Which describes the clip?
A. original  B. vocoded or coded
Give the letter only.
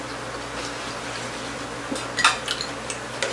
A